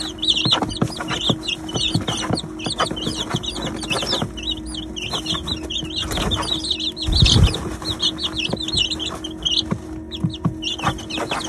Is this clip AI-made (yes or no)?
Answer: no